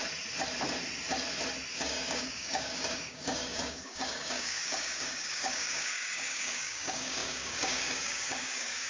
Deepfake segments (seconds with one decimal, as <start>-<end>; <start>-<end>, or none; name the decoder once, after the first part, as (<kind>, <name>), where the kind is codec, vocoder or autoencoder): 1.7-8.9 (codec, DAC)